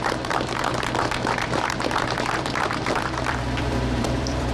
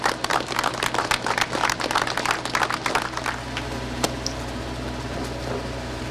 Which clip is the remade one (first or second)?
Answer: first